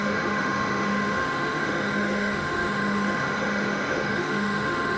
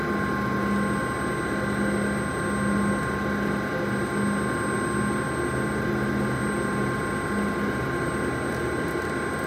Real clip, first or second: second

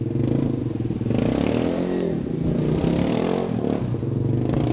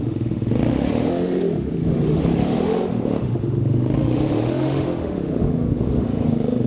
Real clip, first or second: first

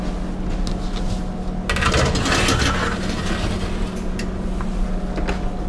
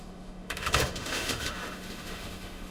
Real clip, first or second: first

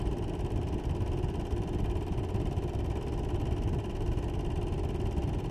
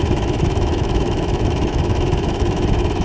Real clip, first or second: first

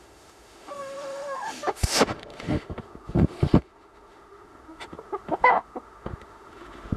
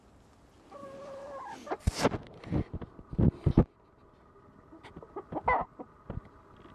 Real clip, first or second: second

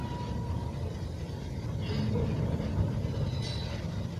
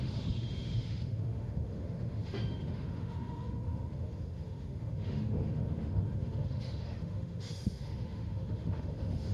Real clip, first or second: first